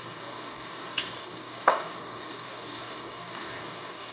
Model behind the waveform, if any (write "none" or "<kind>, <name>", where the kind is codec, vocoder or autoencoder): codec, DAC